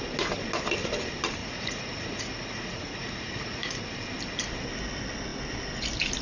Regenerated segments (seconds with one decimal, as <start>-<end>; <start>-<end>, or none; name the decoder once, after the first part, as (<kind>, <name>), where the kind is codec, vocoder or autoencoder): 1.4-3.8 (vocoder, Vocos)